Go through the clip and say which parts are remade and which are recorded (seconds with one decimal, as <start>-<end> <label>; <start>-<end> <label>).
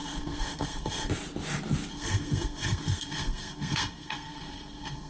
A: 0.0-1.1 remade; 1.1-1.9 recorded; 1.9-5.1 remade